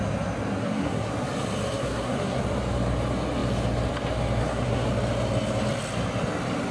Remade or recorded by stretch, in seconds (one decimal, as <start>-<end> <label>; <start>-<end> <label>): 0.0-0.6 recorded; 0.6-1.1 remade; 1.1-1.8 recorded; 1.8-2.4 remade; 2.4-4.4 recorded; 4.4-4.9 remade; 4.9-6.7 recorded